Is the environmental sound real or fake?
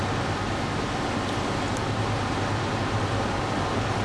real